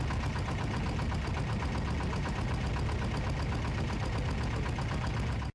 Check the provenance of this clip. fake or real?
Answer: real